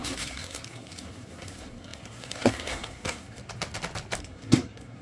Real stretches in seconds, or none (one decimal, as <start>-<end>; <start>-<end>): 3.4-4.2